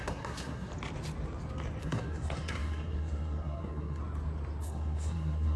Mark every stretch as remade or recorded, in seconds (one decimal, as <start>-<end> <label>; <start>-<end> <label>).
0.0-0.7 remade; 0.7-1.8 recorded; 1.8-4.0 remade; 4.0-4.6 recorded; 4.6-5.6 remade